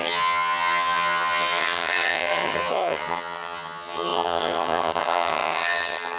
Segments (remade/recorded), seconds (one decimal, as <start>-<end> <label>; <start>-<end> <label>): 0.0-6.2 remade